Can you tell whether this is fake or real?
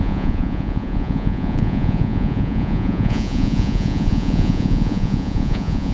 fake